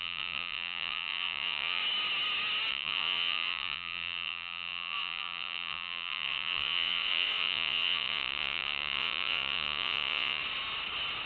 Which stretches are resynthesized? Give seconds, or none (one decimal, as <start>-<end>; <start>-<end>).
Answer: 0.0-1.8; 2.7-10.4